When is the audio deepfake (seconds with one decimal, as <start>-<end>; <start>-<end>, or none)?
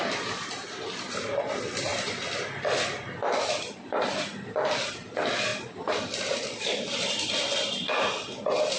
1.9-4.9; 5.5-7.1